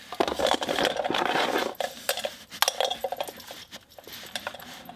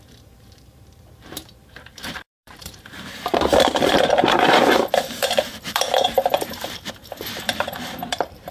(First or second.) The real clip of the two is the first